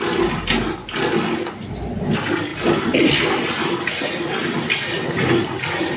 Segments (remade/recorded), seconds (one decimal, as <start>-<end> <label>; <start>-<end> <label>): 0.0-6.0 recorded